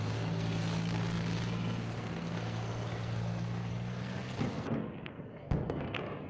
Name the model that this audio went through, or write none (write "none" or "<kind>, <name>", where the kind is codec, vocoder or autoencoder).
codec, SNAC